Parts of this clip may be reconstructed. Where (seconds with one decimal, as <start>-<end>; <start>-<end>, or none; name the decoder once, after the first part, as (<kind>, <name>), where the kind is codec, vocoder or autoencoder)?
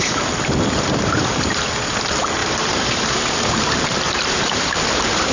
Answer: 2.4-5.3 (vocoder, BigVGAN v2)